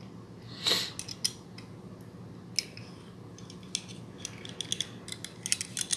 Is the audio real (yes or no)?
yes